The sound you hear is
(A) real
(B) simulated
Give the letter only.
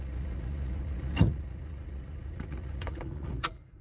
B